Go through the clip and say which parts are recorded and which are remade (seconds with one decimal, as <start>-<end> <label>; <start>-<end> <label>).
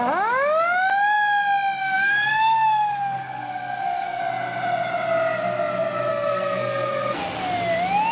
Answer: 0.0-1.8 recorded; 1.8-4.2 remade; 4.2-6.1 recorded; 6.1-7.2 remade; 7.2-8.1 recorded